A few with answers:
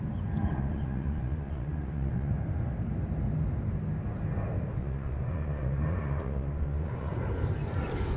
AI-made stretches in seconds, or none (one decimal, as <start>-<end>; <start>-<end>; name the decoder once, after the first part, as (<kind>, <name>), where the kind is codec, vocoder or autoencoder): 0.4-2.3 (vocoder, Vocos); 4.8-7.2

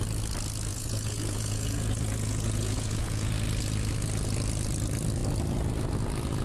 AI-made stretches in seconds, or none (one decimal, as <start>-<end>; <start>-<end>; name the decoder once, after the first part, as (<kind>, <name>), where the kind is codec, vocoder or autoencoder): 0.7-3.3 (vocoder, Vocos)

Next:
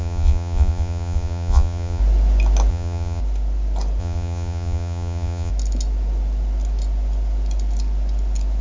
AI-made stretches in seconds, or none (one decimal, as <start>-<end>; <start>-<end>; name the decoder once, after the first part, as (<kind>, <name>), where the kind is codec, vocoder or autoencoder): 0.0-2.0 (vocoder, Vocos); 2.7-3.2; 4.0-5.5

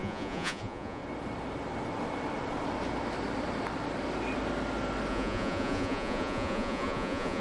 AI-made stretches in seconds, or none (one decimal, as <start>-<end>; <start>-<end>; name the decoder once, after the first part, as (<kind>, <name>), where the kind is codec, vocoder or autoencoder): 0.0-1.0 (vocoder, Vocos); 5.1-7.4

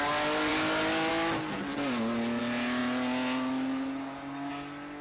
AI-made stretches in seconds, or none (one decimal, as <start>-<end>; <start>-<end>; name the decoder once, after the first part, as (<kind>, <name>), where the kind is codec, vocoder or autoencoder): none

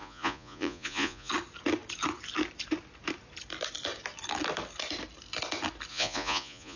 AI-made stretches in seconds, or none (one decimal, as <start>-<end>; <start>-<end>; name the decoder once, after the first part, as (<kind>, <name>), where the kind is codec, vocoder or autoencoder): 0.0-1.3 (vocoder, Vocos); 5.9-6.8